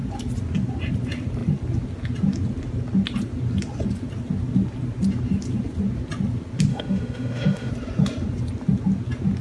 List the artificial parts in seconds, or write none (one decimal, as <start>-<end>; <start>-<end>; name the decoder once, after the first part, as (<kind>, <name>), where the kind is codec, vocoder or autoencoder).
6.7-7.7 (autoencoder, DAC-VAE)